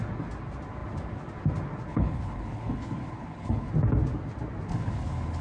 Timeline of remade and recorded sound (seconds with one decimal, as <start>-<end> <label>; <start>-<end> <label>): 0.0-1.9 recorded; 1.9-3.7 remade; 3.7-4.7 recorded; 4.7-5.4 remade